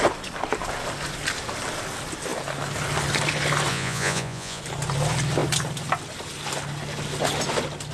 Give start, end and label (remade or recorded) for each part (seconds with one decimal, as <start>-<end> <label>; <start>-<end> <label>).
0.0-3.7 recorded; 3.7-4.6 remade; 4.6-7.9 recorded